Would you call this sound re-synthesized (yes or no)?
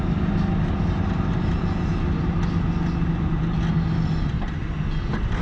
no